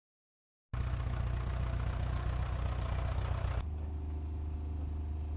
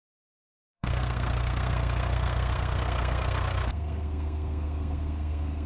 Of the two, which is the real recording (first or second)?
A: first